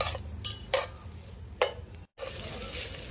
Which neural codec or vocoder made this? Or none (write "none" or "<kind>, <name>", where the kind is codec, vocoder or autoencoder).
none